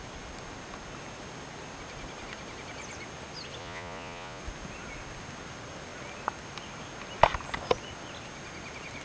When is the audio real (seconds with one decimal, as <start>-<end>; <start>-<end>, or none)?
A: 0.0-3.6; 4.4-9.0